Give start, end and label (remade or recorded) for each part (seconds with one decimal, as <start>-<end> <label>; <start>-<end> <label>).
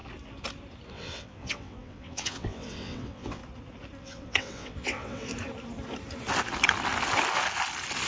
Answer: 0.0-0.9 recorded; 0.9-3.4 remade; 3.4-4.0 recorded; 4.0-5.3 remade; 5.3-8.1 recorded